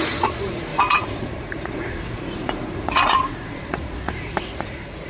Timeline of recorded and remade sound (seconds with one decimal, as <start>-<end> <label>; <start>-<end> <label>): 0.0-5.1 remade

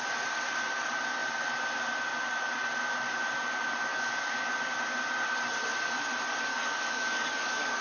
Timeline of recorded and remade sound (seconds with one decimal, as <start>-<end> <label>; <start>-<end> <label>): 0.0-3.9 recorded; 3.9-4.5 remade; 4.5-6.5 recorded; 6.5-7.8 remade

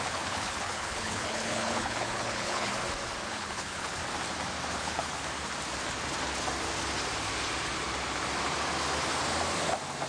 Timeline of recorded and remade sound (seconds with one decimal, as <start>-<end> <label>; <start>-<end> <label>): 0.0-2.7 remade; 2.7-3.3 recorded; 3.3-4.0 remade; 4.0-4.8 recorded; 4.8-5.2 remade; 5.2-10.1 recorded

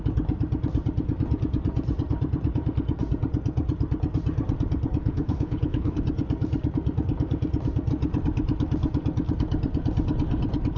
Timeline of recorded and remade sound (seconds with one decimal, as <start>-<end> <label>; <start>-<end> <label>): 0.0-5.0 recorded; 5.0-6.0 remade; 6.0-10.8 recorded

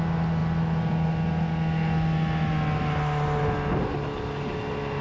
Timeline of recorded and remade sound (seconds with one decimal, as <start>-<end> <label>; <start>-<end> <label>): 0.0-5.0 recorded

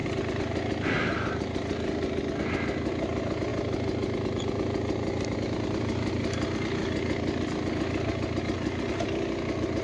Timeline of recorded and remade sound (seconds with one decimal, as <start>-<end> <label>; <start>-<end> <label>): 0.0-9.8 recorded

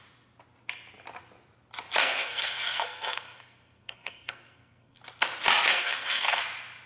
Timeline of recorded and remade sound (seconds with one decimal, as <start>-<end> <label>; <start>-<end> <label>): 0.0-2.0 recorded; 2.0-5.0 remade; 5.0-5.7 recorded; 5.7-6.4 remade; 6.4-6.9 recorded